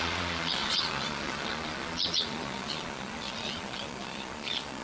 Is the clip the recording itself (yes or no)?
no